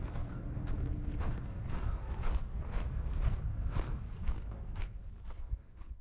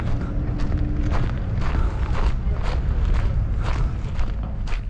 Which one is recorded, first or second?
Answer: second